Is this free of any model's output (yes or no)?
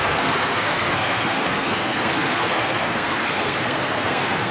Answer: no